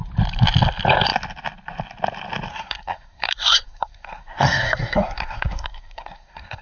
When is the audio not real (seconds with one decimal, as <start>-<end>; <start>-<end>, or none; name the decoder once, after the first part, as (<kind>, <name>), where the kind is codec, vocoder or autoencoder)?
2.5-6.6 (codec, SNAC)